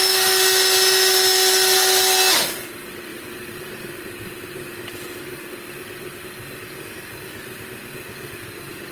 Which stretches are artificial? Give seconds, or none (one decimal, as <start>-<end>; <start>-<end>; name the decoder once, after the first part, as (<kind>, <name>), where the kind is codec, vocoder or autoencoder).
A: 3.1-3.9 (vocoder, BigVGAN v2)